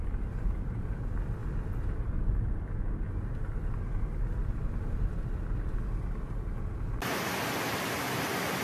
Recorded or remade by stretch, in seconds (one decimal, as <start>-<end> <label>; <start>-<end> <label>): 0.0-1.4 recorded; 1.4-2.2 remade; 2.2-4.4 recorded; 4.4-6.3 remade; 6.3-8.6 recorded